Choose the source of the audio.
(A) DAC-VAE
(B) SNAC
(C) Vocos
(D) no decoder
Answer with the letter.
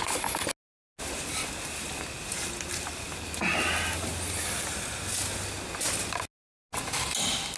D